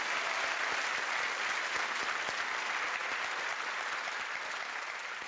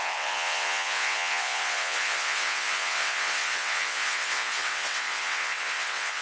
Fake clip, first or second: second